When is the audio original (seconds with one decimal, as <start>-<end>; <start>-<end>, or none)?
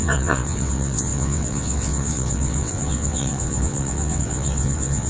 none